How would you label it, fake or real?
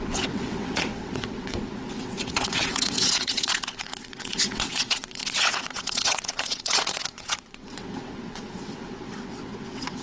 fake